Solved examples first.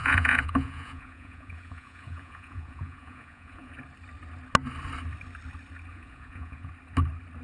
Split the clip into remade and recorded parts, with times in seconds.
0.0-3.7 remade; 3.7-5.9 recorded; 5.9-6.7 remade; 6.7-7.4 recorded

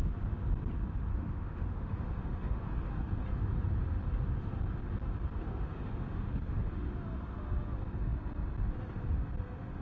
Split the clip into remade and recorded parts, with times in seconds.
0.0-1.1 recorded; 1.1-2.7 remade; 2.7-5.5 recorded; 5.5-6.9 remade; 6.9-9.8 recorded